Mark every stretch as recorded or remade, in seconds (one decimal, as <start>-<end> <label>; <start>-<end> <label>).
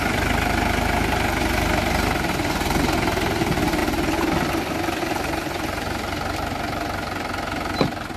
0.0-8.2 recorded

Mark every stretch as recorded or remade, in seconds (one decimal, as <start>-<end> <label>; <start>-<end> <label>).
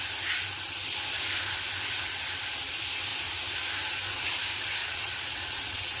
0.0-4.8 recorded; 4.8-6.0 remade